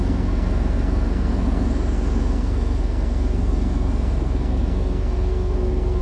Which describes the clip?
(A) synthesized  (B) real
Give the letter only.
A